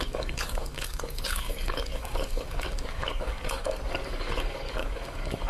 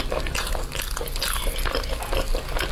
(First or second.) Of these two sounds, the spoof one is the first